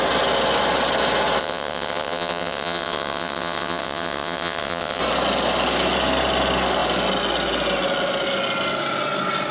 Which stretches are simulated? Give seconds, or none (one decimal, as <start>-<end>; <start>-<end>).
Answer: 1.4-5.0

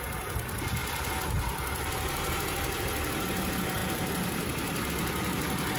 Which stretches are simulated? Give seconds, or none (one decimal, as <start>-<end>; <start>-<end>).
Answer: 3.8-4.9

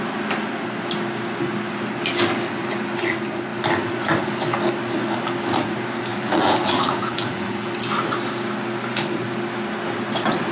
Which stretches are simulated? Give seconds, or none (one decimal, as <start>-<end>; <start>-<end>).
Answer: 6.1-7.7

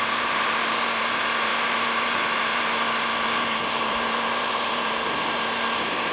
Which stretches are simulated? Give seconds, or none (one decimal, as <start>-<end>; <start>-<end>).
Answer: 0.0-6.1